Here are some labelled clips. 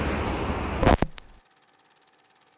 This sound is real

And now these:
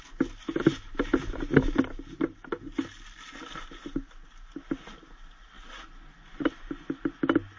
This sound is real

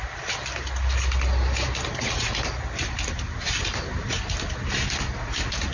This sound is real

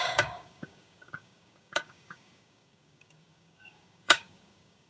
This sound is fake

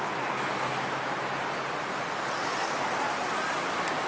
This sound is real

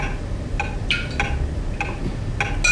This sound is real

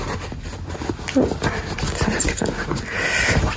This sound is real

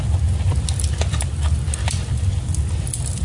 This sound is real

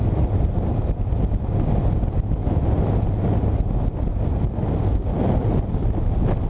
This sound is real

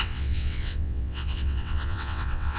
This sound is fake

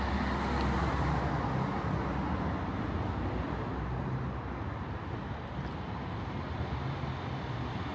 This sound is real